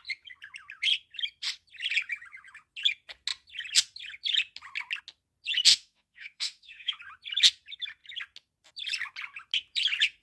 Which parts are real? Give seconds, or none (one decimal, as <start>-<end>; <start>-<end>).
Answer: 0.0-5.7; 7.0-10.2